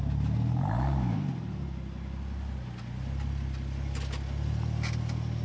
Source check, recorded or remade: recorded